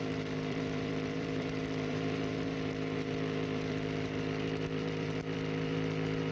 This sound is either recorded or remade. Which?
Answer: remade